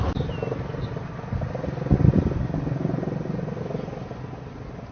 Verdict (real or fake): real